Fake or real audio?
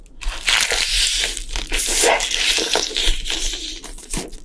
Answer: real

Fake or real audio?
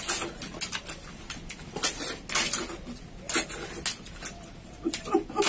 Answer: real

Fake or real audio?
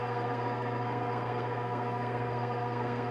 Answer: fake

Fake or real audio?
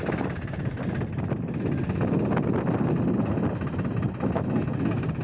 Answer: real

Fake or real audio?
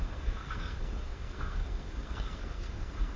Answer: fake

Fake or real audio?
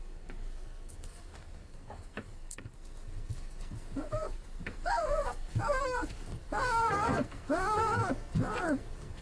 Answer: fake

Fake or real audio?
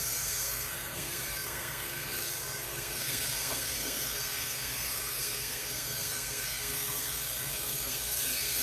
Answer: fake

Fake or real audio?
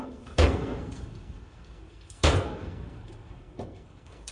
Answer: fake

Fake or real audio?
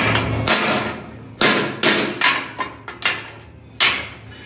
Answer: real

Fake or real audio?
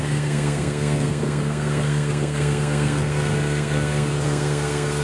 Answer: fake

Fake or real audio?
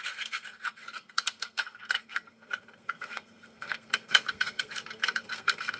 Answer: fake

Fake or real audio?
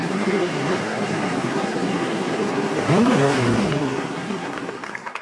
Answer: fake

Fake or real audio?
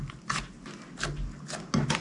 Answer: real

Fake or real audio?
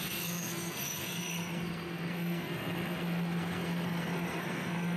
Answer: fake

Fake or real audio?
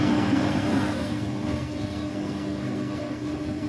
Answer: fake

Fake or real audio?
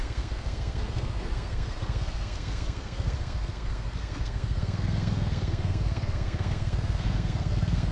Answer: fake